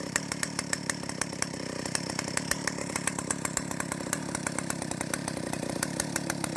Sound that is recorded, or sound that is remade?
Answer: remade